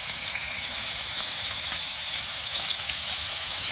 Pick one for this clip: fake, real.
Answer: fake